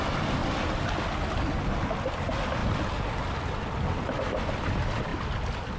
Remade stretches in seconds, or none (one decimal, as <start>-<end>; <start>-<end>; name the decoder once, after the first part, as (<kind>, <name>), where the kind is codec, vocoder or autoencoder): none